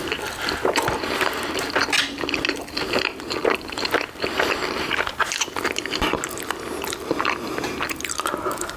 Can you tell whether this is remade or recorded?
recorded